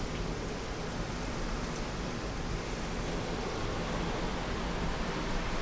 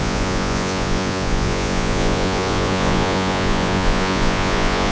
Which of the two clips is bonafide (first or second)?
first